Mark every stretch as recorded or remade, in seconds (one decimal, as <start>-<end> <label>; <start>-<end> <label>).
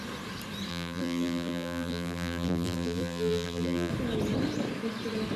0.0-0.7 recorded; 0.7-3.9 remade; 3.9-5.4 recorded